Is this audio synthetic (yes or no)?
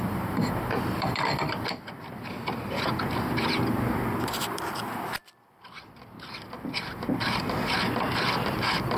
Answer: yes